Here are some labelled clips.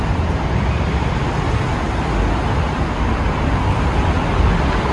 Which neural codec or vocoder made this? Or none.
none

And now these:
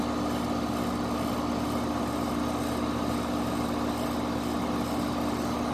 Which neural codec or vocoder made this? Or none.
none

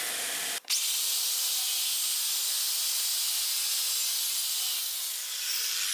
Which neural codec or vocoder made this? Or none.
none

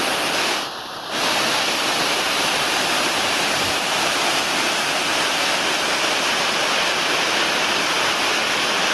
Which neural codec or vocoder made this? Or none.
none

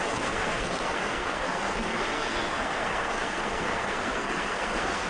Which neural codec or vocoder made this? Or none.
codec, SNAC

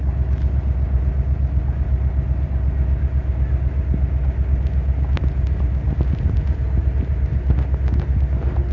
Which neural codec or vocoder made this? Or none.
none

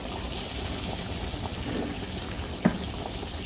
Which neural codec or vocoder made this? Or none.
none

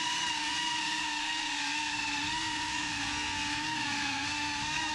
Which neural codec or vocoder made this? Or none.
codec, SNAC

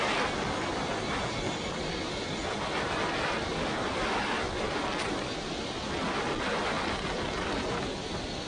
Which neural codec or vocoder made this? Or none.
none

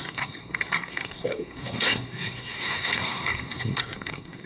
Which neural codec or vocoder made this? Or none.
codec, SNAC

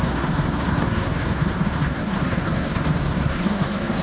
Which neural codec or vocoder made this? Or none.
codec, SNAC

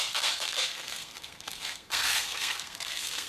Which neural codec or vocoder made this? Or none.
codec, SNAC